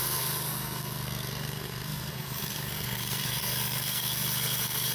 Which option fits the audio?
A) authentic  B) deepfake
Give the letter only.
B